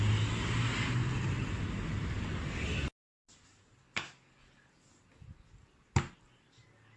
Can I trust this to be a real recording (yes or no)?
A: yes